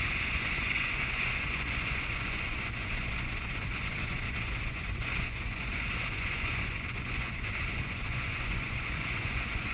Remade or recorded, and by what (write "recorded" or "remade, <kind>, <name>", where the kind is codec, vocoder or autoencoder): remade, vocoder, Vocos